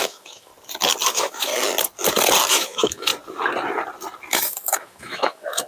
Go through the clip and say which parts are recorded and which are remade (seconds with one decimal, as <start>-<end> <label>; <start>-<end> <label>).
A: 0.0-0.5 remade; 0.5-1.1 recorded; 1.1-1.5 remade; 1.5-2.5 recorded; 2.5-3.1 remade; 3.1-4.3 recorded; 4.3-5.7 remade